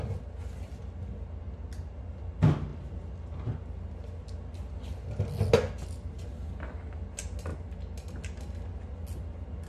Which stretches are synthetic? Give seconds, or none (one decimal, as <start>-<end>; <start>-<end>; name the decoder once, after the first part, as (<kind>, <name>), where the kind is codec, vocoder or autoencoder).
none